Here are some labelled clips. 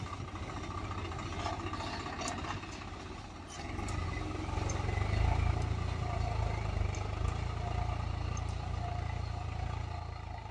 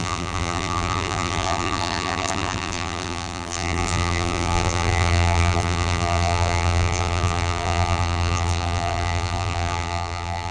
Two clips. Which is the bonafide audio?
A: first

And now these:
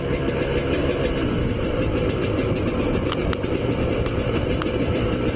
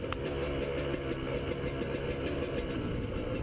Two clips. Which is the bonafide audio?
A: second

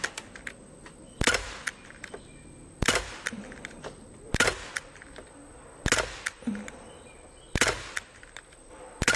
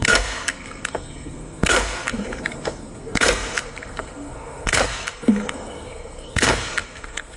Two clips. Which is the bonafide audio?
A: first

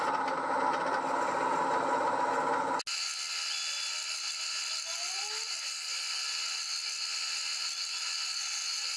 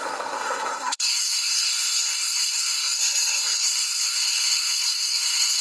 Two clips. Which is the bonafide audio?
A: first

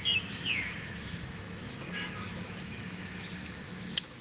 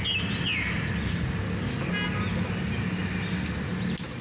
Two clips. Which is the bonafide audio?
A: second